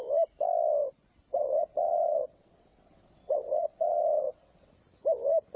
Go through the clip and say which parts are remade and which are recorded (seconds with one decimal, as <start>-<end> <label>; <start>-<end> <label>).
0.0-1.3 recorded; 1.3-4.7 remade; 4.7-5.6 recorded